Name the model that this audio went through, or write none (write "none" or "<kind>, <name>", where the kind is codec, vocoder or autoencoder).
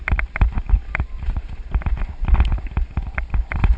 none